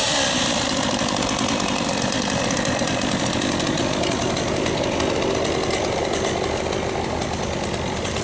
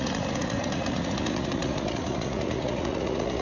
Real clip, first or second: first